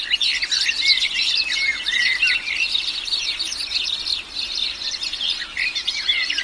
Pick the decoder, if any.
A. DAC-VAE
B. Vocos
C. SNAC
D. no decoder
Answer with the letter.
D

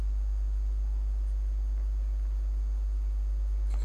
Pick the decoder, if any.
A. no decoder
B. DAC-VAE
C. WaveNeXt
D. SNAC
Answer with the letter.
A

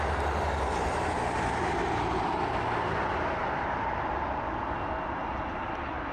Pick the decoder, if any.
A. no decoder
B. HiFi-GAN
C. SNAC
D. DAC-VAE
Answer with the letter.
A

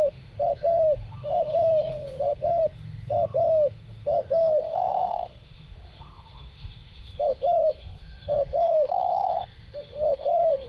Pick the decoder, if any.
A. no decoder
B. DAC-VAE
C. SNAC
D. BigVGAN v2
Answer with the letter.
B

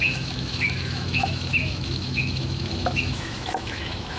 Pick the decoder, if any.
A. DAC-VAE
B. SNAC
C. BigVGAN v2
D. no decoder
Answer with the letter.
A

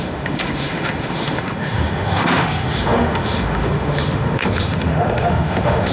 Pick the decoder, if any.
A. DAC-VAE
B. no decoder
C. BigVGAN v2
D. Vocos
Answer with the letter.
A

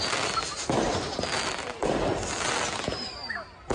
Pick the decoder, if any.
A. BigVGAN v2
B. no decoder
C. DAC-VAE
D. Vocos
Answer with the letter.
B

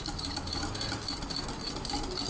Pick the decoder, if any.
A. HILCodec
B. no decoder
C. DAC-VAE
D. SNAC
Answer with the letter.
B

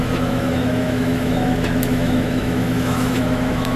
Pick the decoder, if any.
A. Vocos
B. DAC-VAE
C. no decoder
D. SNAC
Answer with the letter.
B